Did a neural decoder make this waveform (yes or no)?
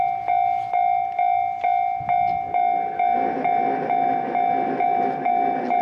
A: no